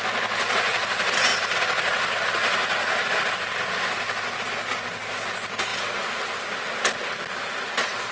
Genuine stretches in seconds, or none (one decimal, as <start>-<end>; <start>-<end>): 0.0-8.1